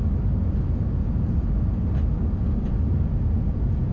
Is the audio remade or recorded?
recorded